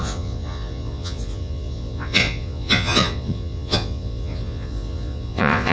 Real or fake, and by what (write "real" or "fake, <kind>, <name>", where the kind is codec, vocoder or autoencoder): fake, vocoder, Vocos